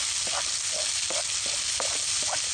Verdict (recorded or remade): recorded